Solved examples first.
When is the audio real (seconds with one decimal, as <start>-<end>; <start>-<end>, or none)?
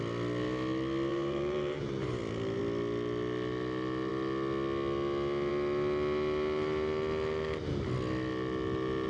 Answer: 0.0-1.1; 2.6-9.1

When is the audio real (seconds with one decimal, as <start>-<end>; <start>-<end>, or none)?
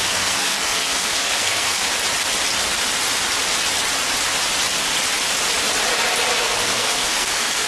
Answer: 1.8-6.4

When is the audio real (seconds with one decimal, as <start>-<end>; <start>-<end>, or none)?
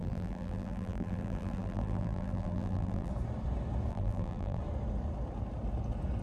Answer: 3.1-3.9; 4.6-6.2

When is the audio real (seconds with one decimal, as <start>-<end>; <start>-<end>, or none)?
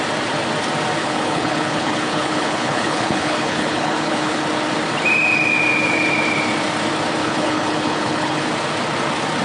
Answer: 0.0-1.0; 4.4-7.2; 8.5-9.4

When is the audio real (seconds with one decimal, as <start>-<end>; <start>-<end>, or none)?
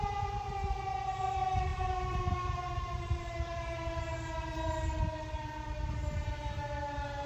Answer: none